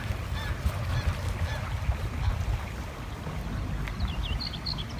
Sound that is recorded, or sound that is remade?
recorded